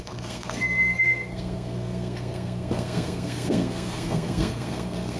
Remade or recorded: remade